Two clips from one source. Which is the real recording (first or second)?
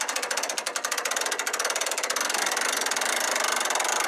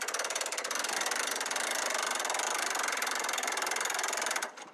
first